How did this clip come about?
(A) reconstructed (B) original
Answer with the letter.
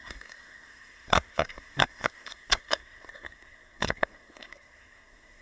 A